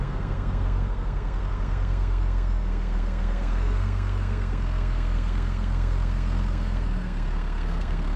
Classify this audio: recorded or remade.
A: remade